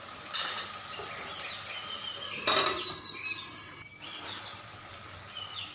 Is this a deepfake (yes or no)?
no